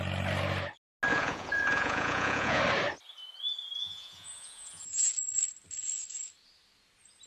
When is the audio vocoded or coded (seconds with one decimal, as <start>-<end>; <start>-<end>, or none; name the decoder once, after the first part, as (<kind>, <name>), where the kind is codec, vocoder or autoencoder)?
1.1-2.6 (vocoder, Vocos); 3.8-5.1